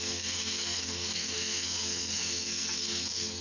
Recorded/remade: remade